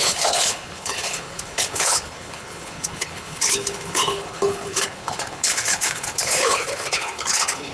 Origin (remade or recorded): remade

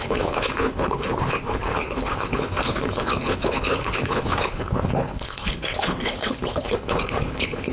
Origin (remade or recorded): remade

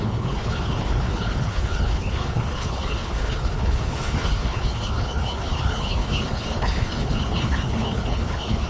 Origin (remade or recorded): remade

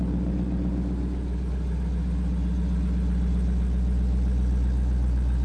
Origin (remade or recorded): recorded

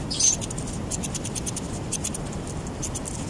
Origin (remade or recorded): recorded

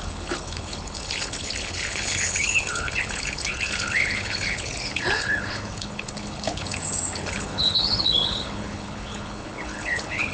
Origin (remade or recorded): remade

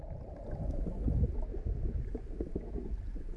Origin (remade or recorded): recorded